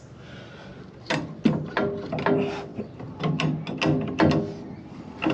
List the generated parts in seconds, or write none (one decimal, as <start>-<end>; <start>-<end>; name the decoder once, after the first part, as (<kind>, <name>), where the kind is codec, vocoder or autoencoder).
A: none